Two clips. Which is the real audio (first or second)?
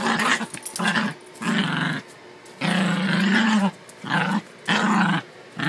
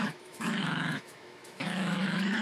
first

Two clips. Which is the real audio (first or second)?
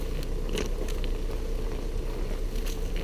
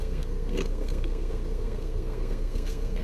first